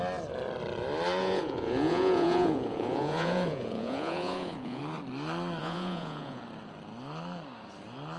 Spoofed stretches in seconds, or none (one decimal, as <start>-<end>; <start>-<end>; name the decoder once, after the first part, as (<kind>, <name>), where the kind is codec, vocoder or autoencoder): 1.2-4.8 (vocoder, Vocos); 5.6-6.4